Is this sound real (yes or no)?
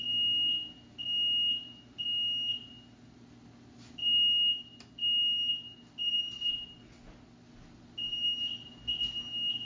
yes